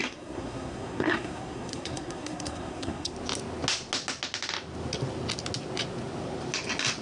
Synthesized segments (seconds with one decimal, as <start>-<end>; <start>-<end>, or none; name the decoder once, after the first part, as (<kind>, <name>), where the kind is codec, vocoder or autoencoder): 0.0-3.1 (codec, SNAC)